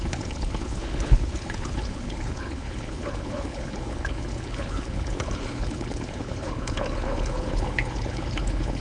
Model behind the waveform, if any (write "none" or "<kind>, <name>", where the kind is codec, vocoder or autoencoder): codec, HILCodec